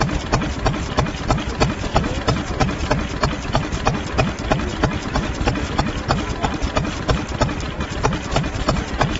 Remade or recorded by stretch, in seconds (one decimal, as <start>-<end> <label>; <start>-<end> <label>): 0.0-1.9 recorded; 1.9-2.9 remade; 2.9-9.2 recorded